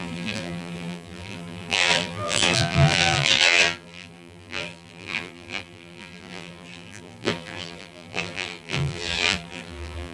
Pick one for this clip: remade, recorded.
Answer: remade